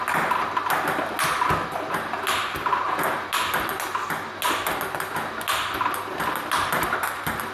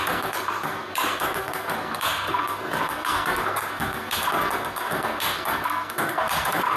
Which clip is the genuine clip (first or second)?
first